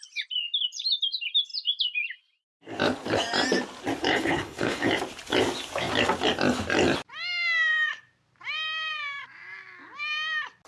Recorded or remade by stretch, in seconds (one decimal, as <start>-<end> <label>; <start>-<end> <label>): 0.0-4.1 recorded; 4.1-4.9 remade; 4.9-10.7 recorded